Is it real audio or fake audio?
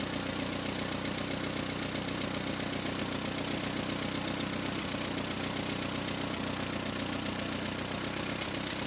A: real